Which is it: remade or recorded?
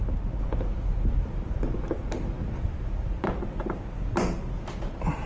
recorded